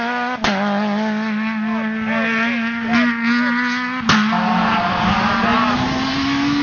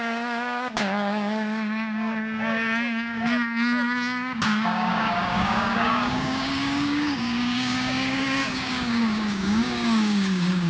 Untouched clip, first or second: first